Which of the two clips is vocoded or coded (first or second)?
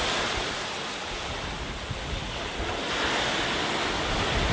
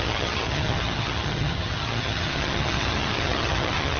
second